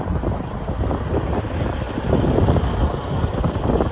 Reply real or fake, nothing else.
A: real